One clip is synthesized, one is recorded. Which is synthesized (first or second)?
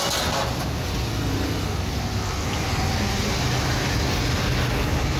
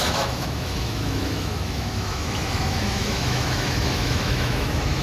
second